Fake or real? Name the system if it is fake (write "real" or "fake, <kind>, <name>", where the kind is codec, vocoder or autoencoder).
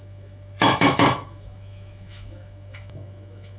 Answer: fake, autoencoder, DAC-VAE